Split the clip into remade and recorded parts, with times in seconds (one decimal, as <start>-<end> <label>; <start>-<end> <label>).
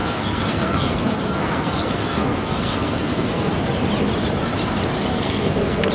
0.0-3.5 remade; 3.5-5.1 recorded; 5.1-5.9 remade